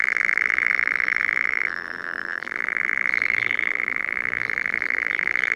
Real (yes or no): no